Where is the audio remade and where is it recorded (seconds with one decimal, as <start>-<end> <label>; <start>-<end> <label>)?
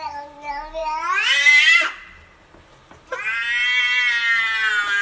0.0-5.0 recorded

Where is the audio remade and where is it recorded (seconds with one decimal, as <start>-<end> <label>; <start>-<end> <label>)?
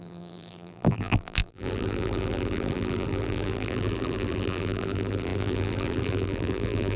0.0-7.0 remade